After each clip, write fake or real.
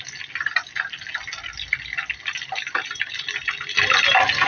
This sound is real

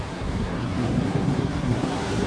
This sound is fake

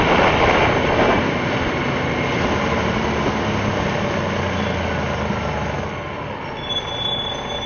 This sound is real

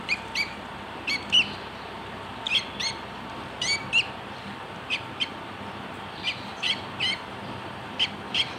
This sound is fake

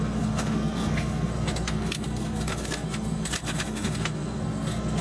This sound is fake